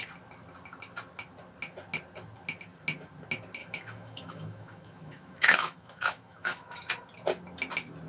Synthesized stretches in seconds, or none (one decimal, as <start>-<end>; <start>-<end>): 3.6-6.9